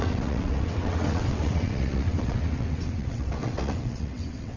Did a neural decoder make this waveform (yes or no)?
yes